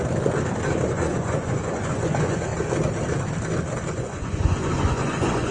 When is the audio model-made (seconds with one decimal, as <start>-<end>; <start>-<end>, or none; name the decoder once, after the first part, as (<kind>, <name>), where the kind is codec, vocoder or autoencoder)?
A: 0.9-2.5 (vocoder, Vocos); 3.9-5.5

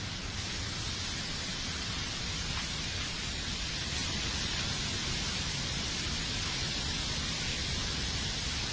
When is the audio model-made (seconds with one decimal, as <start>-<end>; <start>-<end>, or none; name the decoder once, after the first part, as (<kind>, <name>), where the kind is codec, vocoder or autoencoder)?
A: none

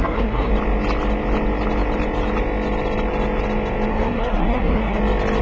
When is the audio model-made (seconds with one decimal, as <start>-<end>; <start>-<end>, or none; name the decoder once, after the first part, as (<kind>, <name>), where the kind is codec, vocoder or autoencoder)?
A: 0.0-0.5 (codec, SNAC); 3.9-5.0

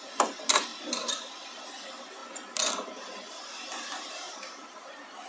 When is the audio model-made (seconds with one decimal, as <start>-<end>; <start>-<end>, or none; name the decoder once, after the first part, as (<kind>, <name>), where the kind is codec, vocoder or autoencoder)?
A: 0.7-1.6 (vocoder, BigVGAN v2)

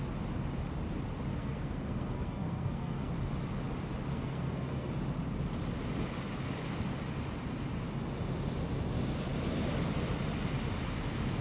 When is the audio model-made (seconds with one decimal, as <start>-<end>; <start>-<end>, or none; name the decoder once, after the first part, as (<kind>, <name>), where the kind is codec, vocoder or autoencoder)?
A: 1.3-3.1 (codec, SNAC); 4.1-4.9